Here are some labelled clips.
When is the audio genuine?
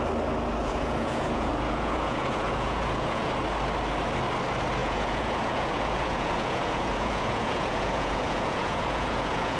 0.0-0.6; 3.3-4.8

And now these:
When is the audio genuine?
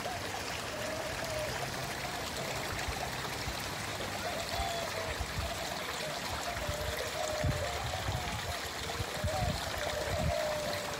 3.9-9.0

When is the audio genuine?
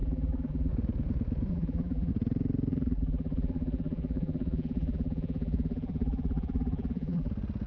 0.7-1.5; 2.1-2.7; 7.3-7.7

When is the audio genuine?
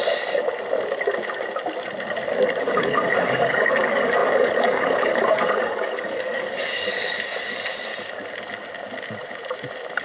0.0-2.6; 7.9-10.0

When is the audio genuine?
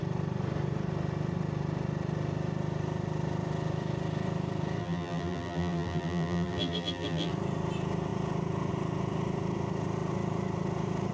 0.0-4.8; 7.3-11.1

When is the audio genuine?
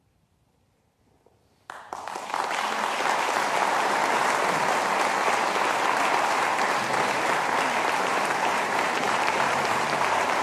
0.0-8.1